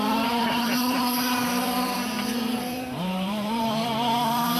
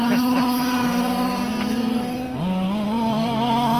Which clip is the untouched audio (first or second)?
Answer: second